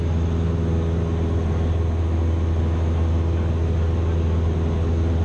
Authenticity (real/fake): real